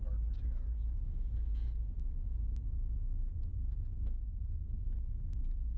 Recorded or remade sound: recorded